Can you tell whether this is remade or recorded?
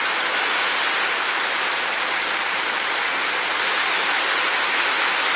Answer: recorded